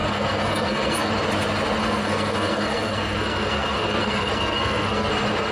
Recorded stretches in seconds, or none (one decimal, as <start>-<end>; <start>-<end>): 1.1-1.8; 5.1-5.5